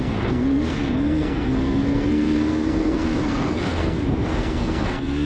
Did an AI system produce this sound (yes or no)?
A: yes